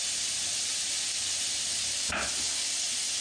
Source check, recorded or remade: recorded